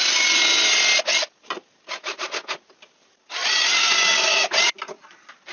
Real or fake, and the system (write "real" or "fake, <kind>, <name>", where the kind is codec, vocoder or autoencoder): real